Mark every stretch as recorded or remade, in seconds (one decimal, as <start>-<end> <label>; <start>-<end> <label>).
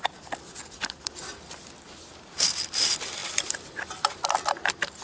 0.0-1.3 remade; 1.3-3.2 recorded; 3.2-4.1 remade; 4.1-5.0 recorded